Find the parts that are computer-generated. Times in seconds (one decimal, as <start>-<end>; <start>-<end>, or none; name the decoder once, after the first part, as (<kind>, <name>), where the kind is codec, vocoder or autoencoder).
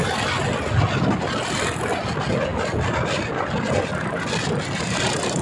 none